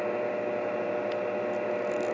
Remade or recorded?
recorded